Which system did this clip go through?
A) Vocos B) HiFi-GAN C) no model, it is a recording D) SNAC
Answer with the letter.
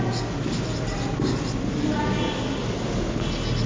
C